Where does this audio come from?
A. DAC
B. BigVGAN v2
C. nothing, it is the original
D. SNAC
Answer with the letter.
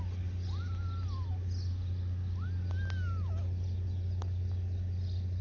C